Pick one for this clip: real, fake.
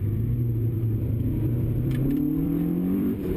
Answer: fake